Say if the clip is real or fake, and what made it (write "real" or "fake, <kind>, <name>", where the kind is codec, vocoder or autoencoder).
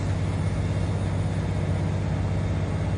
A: real